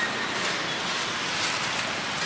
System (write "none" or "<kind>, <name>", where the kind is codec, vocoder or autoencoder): none